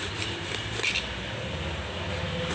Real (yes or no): yes